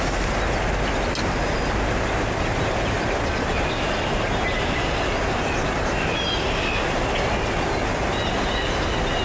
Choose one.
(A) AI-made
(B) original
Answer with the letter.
B